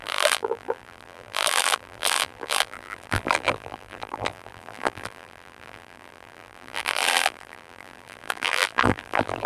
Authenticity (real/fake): fake